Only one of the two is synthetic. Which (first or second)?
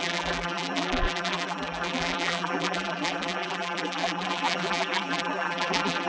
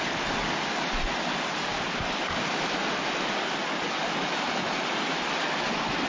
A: first